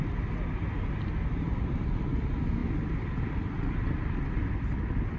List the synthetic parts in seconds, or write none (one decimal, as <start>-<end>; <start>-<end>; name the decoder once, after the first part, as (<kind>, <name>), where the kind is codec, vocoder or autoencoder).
none